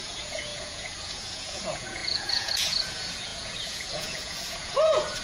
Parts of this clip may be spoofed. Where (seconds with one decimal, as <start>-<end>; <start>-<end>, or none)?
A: 0.0-5.2